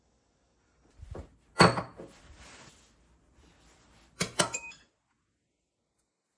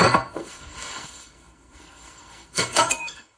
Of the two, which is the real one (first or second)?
first